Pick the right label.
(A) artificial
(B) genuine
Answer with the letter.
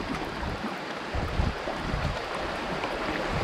A